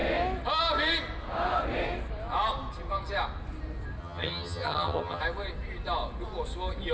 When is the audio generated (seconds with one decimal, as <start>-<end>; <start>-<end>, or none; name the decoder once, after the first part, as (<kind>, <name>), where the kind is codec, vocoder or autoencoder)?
4.0-5.2 (vocoder, HiFi-GAN)